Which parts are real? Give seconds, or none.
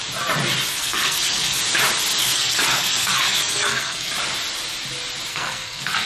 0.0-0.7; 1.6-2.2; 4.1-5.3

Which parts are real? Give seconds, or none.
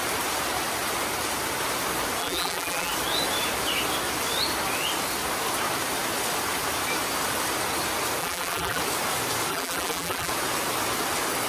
0.0-2.2; 2.9-8.2; 8.8-9.5; 10.3-11.5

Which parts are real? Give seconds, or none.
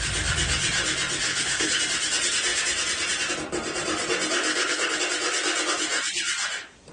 0.0-1.3; 1.8-4.5; 5.0-6.9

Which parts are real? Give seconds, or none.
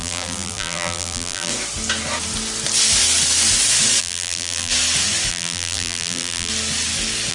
1.5-4.0; 4.7-5.3; 6.5-7.3